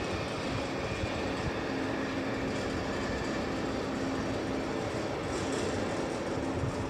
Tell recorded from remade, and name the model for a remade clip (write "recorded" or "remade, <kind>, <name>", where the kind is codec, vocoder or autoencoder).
recorded